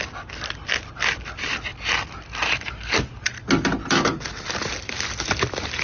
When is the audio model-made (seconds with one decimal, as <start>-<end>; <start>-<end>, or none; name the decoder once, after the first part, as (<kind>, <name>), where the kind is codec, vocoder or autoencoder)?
none